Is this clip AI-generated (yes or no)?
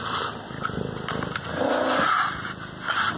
no